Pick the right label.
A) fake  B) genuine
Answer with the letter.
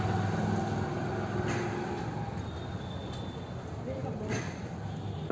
B